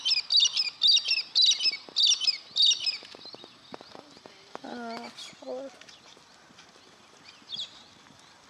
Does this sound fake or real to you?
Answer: real